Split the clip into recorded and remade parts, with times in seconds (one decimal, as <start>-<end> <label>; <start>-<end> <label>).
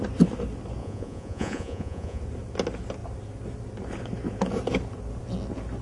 0.0-0.8 recorded; 0.8-2.2 remade; 2.2-5.8 recorded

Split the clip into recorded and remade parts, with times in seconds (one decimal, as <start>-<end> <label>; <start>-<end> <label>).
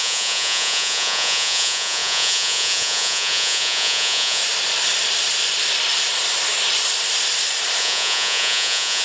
0.0-4.4 remade; 4.4-7.8 recorded; 7.8-9.0 remade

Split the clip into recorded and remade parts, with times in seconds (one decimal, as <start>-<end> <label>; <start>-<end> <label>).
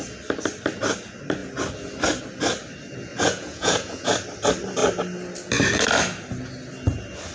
0.0-3.1 recorded; 3.1-4.1 remade; 4.1-7.3 recorded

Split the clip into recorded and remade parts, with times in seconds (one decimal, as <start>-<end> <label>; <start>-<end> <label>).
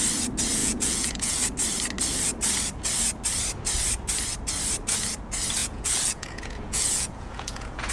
0.0-0.6 recorded; 0.6-1.4 remade; 1.4-5.6 recorded; 5.6-7.9 remade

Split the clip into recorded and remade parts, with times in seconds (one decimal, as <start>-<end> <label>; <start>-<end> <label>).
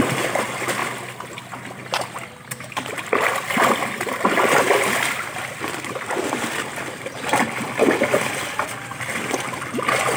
0.0-10.2 recorded